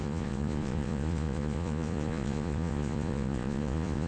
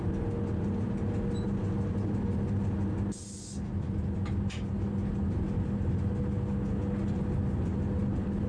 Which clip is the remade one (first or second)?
first